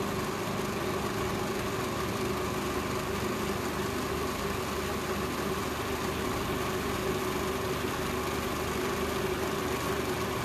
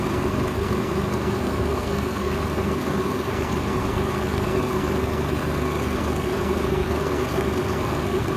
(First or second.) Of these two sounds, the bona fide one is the first